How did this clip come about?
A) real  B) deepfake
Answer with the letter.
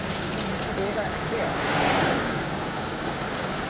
B